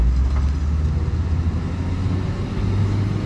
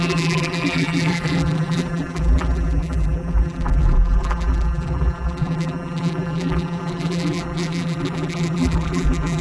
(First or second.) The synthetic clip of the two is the second